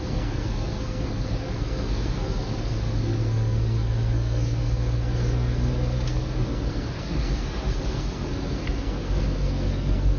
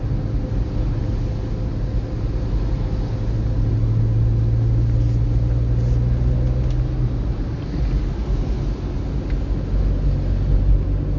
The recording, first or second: second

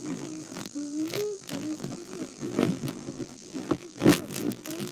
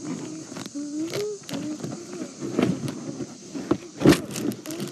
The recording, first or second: second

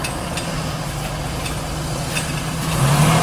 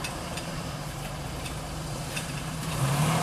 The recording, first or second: first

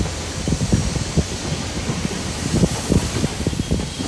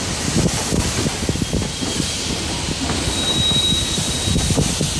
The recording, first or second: second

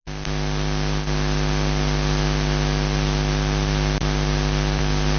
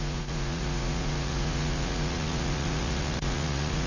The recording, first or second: first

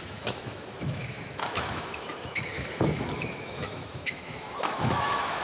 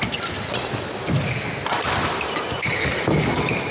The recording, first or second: second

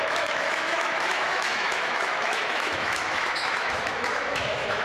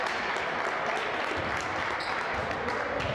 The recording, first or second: second